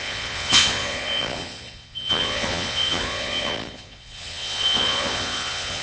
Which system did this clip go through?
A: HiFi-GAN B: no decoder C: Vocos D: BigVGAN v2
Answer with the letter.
C